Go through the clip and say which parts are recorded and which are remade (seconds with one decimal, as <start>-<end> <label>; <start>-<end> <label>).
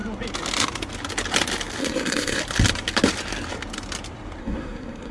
0.0-1.8 recorded; 1.8-2.4 remade; 2.4-4.4 recorded; 4.4-5.1 remade